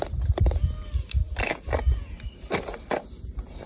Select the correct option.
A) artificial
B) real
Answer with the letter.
B